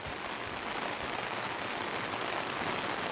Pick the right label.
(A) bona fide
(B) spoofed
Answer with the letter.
A